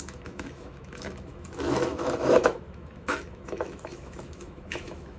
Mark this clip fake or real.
fake